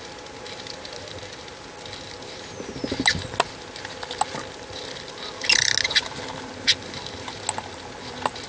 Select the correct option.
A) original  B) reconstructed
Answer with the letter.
A